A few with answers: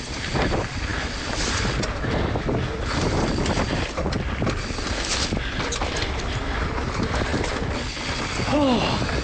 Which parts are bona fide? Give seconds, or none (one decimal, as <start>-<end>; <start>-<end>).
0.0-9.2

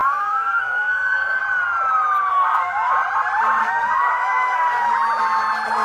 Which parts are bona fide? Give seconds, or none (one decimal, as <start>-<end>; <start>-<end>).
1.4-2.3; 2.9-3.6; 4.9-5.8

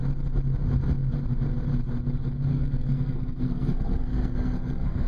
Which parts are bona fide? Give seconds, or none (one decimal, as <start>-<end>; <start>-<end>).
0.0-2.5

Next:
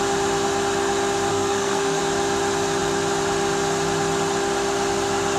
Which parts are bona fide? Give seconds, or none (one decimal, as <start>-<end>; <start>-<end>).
0.0-1.3; 2.0-5.4

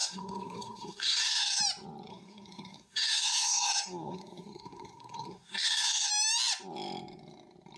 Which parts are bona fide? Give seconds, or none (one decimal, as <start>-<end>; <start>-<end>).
1.6-2.1; 6.1-7.8

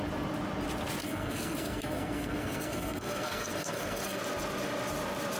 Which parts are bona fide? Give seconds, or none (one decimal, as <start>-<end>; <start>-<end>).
0.0-1.0; 4.2-5.4

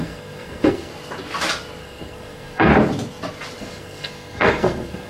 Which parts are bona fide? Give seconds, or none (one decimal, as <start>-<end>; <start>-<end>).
0.9-1.8; 2.7-3.6